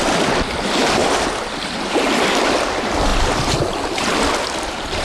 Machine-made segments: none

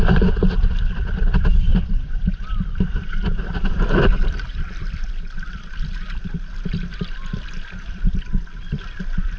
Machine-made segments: none

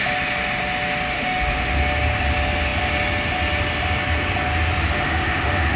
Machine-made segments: 1.1-1.8 (autoencoder, DAC-VAE); 4.8-5.8

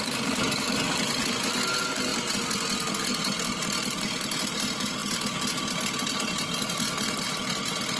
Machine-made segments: none

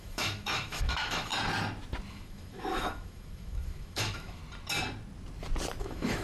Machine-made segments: 0.0-1.3 (autoencoder, DAC-VAE); 2.1-4.4; 5.8-6.2

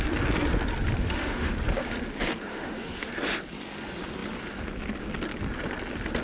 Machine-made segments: 1.0-1.5 (autoencoder, DAC-VAE); 2.5-3.1

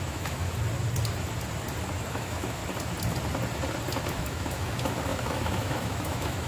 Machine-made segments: 0.0-0.4 (autoencoder, DAC-VAE); 2.1-2.6; 4.0-6.5